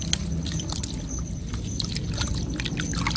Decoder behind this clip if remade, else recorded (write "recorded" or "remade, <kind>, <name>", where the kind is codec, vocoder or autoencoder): recorded